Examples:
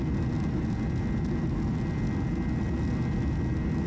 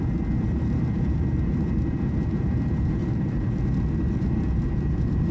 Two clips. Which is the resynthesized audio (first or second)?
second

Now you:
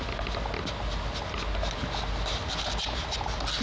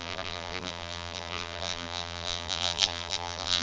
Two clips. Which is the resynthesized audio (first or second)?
second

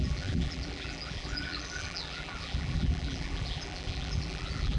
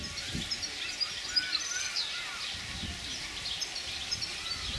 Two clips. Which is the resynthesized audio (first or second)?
first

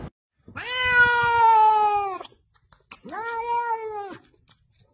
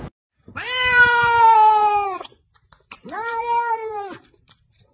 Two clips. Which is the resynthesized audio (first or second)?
second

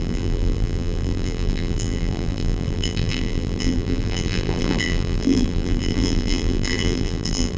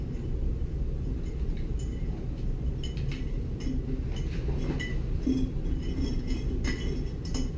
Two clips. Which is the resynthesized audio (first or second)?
first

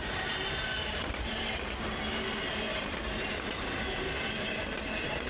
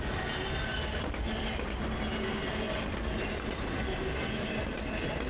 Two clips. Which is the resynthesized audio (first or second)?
first